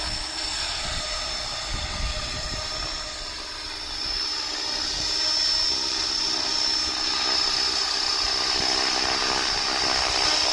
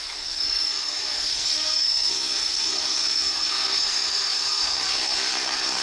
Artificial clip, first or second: second